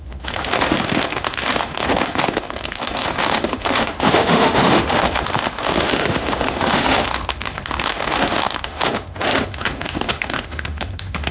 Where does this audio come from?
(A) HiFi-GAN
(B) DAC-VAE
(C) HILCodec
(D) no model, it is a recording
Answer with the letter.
B